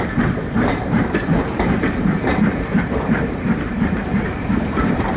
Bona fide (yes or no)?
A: no